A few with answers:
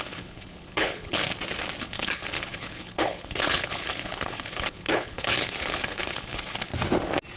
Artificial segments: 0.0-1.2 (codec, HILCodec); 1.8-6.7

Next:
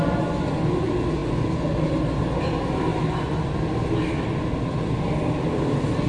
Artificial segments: none

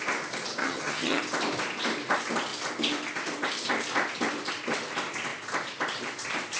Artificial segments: 0.6-1.2 (vocoder, HiFi-GAN)

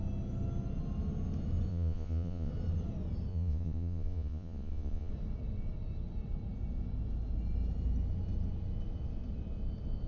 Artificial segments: 1.7-2.5 (vocoder, Vocos); 3.3-5.1

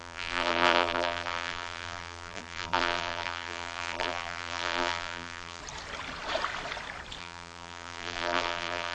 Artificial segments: 0.0-5.6 (vocoder, BigVGAN v2); 7.2-8.9

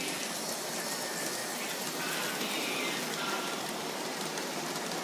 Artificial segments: 0.0-5.0 (vocoder, BigVGAN v2)

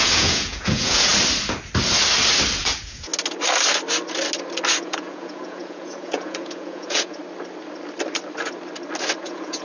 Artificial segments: 0.0-1.1 (vocoder, Vocos); 2.6-3.1; 4.8-7.2; 9.2-9.6